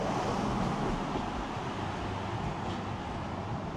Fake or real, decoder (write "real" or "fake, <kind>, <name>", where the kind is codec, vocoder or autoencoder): real